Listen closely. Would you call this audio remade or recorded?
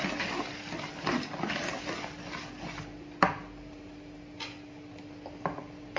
recorded